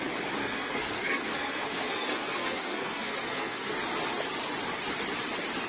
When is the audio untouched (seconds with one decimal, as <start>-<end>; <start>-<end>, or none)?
0.0-0.4; 3.7-5.7